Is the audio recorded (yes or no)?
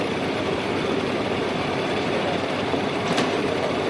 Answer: no